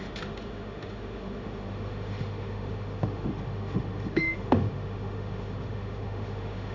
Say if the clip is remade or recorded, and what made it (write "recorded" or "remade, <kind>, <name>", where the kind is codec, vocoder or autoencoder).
remade, autoencoder, DAC-VAE